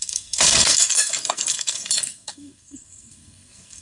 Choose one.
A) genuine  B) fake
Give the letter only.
B